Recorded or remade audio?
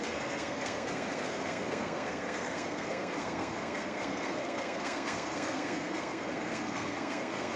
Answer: remade